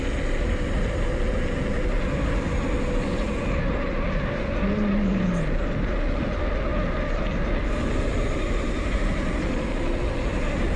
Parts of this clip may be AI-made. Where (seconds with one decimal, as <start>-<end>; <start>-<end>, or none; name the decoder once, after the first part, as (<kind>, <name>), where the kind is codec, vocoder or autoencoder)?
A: none